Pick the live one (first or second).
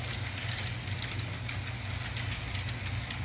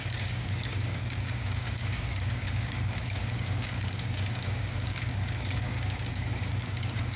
first